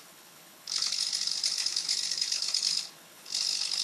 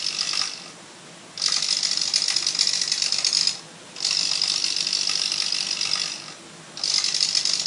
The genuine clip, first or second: second